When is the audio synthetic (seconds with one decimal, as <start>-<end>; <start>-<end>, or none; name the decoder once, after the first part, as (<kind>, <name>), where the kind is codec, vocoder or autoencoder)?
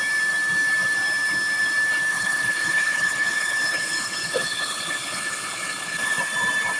2.1-6.2 (codec, HILCodec)